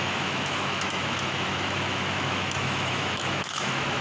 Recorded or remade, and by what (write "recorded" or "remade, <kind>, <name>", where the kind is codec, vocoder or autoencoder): remade, autoencoder, DAC-VAE